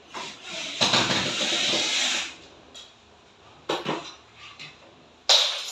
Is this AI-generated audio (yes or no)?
no